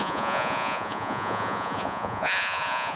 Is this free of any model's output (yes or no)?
no